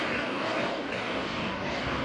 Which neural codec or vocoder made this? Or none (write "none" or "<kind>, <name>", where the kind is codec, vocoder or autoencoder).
codec, DAC